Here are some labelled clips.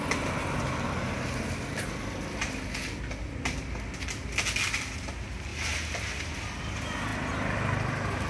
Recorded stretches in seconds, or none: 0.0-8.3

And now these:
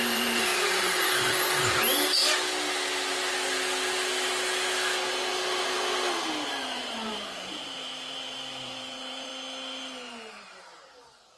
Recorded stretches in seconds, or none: 2.2-6.5; 9.3-10.3

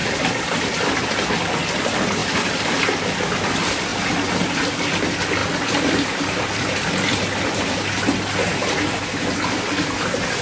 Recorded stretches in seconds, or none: 0.9-2.2; 3.2-5.4; 7.8-10.4

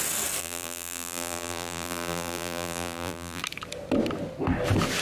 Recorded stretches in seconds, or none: 0.0-0.4; 3.4-5.0

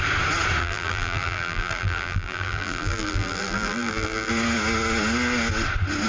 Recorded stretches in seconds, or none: 0.0-0.6; 4.3-6.1

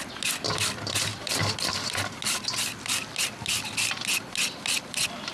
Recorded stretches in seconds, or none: 0.0-1.1; 1.6-5.3

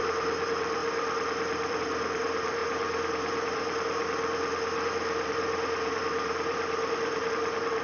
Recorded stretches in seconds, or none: none